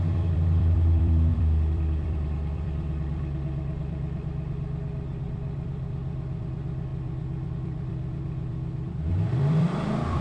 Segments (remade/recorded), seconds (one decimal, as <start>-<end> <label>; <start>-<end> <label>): 0.0-10.2 remade